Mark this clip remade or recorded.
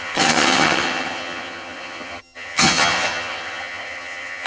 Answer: remade